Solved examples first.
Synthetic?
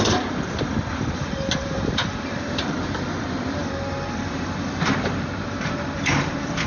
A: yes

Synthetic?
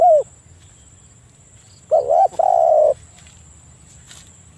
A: no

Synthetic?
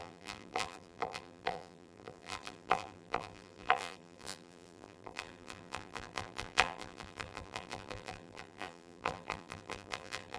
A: yes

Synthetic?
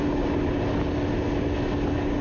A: no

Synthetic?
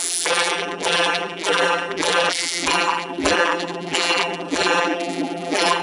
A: yes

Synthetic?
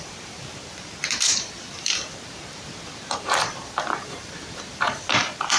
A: yes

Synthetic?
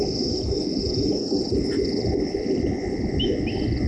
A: no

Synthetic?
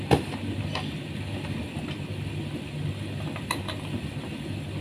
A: no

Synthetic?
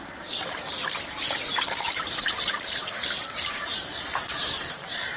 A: yes